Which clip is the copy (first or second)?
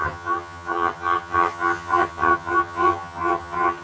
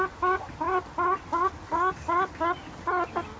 first